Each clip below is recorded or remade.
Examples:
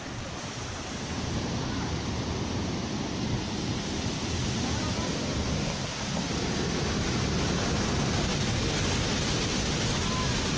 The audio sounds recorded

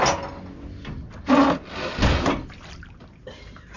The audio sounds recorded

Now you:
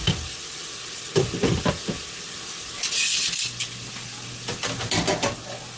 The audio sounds recorded